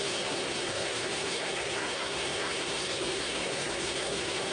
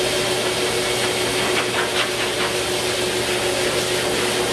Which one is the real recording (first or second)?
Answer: second